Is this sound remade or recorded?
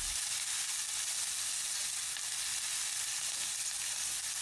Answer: recorded